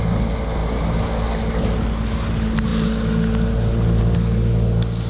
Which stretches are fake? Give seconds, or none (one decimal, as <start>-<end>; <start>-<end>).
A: none